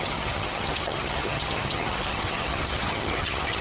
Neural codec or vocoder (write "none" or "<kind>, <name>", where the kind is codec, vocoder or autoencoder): vocoder, HiFi-GAN